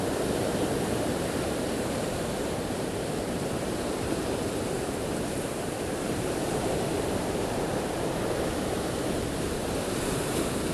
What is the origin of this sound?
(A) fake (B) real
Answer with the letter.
A